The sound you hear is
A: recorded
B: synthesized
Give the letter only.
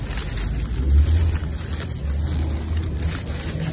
A